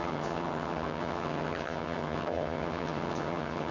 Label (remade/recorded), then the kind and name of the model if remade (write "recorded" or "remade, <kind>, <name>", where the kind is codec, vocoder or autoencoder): remade, vocoder, HiFi-GAN